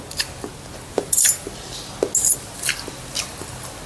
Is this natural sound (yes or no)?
yes